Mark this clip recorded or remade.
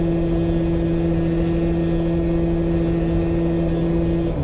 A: recorded